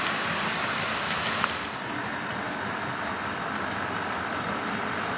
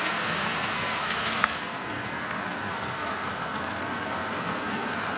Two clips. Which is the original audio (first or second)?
first